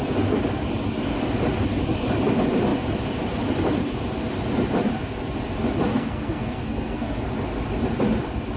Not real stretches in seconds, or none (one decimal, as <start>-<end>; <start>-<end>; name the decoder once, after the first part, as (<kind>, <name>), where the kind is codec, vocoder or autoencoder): 5.9-7.2 (codec, SNAC)